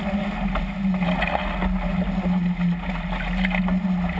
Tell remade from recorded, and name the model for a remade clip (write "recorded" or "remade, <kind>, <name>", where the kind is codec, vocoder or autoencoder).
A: recorded